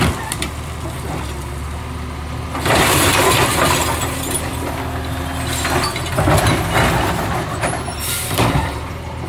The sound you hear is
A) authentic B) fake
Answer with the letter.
A